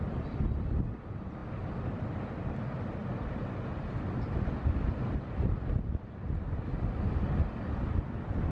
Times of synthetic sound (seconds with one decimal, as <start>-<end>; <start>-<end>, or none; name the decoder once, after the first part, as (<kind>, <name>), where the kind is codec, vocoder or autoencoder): none

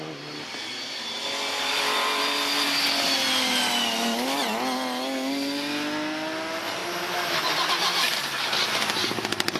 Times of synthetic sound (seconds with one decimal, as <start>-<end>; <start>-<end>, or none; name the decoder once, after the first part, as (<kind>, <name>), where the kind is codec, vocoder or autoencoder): none

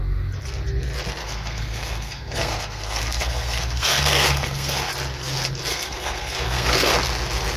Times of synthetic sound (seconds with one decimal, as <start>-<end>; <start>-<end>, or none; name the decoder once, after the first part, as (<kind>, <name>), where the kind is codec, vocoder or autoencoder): 1.2-4.9 (codec, SNAC); 5.7-6.9

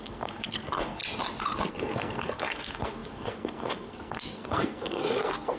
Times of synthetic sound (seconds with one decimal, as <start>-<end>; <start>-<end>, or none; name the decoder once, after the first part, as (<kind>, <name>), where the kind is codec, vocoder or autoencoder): 0.0-1.0 (codec, SNAC); 1.7-5.6

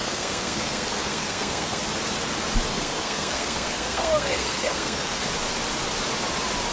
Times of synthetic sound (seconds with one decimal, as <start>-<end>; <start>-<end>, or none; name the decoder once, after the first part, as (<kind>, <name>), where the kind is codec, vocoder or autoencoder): 0.0-1.8 (codec, SNAC); 2.7-5.2

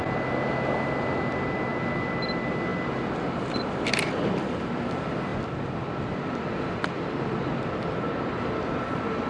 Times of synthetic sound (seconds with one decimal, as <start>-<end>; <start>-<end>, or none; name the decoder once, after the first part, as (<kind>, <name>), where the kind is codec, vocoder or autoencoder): none

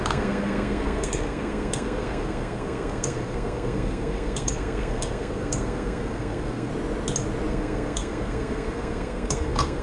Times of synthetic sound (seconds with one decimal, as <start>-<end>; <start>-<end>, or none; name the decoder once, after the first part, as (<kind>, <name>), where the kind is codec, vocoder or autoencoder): 0.0-6.7 (codec, SNAC); 7.5-9.8

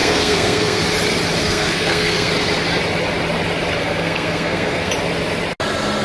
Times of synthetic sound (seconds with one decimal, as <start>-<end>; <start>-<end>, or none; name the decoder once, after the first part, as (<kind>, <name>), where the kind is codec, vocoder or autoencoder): 0.0-0.8 (codec, SNAC); 1.4-2.3; 3.8-4.9